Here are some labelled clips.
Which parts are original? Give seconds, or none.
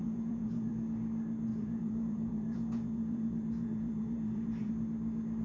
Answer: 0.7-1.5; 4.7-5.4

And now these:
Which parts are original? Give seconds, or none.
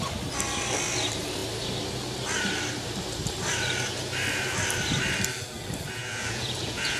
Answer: 0.0-6.0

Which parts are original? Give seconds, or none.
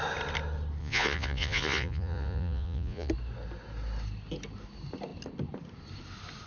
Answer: 0.0-0.8; 3.1-6.5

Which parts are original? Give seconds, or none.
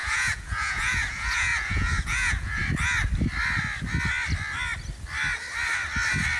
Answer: 2.6-6.4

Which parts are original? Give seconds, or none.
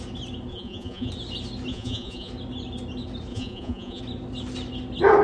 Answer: 0.0-0.5; 1.1-1.7; 2.3-3.3; 4.0-5.2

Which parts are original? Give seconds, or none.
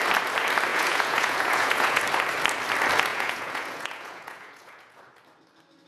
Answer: 0.0-0.7; 2.0-3.1; 5.0-5.9